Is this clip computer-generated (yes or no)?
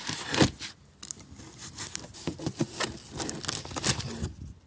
no